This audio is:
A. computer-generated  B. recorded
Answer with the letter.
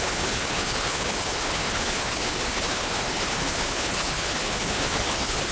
A